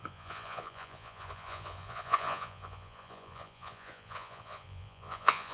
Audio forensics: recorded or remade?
remade